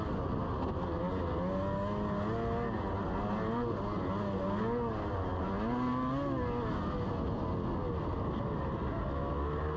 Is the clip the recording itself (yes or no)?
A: yes